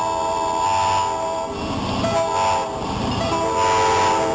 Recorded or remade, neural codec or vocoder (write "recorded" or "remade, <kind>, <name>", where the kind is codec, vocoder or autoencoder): recorded